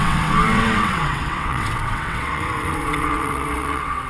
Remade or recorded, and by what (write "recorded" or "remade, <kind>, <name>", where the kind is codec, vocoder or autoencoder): remade, vocoder, WaveNeXt